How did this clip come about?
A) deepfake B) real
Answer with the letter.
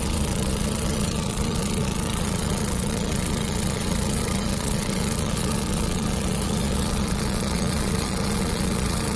A